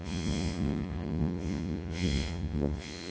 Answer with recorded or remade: remade